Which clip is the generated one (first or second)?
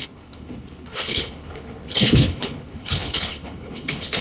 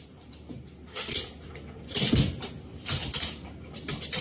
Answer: first